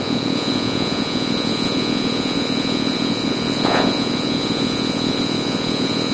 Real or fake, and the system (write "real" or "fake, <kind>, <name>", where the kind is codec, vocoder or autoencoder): fake, vocoder, Vocos